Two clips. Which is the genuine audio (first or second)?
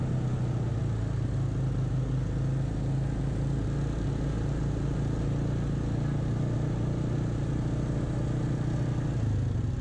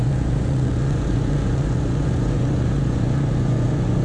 first